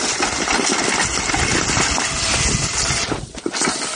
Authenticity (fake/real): real